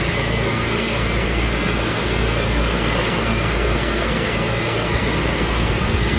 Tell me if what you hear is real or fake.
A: fake